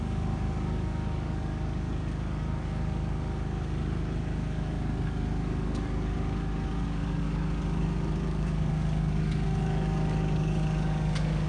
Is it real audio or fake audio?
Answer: fake